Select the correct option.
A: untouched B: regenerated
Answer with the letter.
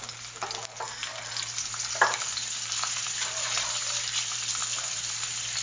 A